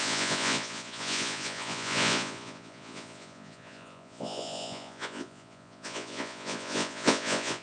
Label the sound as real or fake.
fake